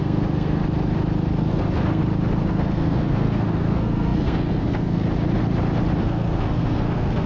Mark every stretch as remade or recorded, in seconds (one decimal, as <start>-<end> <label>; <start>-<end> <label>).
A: 0.0-0.6 remade; 0.6-1.4 recorded; 1.4-2.0 remade; 2.0-2.5 recorded; 2.5-5.0 remade; 5.0-6.0 recorded; 6.0-7.3 remade